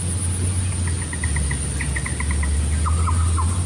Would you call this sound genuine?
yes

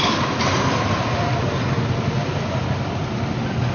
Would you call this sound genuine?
yes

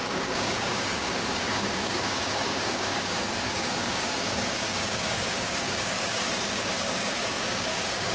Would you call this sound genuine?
no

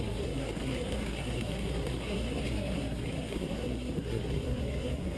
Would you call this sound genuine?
no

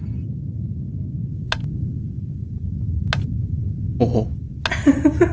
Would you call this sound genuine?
yes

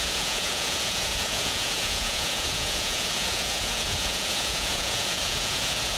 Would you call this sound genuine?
no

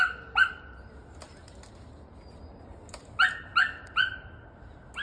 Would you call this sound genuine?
yes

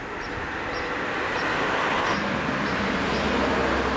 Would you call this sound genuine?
yes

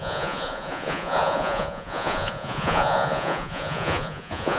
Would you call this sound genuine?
no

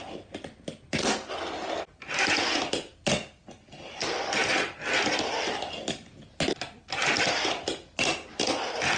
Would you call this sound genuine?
yes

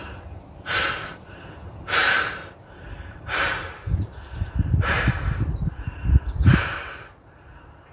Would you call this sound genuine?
no